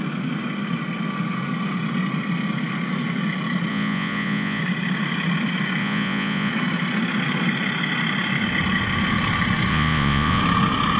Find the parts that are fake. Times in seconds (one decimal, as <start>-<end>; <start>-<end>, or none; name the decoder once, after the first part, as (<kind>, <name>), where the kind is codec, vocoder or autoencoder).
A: 3.7-4.6 (vocoder, Vocos); 5.8-6.5; 9.7-10.4